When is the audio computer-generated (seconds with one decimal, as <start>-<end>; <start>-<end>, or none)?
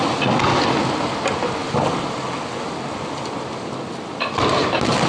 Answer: none